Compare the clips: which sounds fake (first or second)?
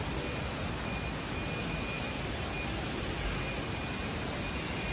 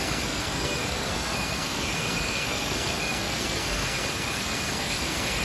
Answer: second